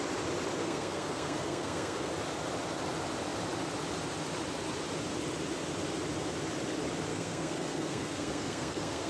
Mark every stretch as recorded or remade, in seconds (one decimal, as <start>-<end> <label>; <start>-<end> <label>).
0.0-0.6 recorded; 0.6-2.1 remade; 2.1-7.1 recorded; 7.1-9.1 remade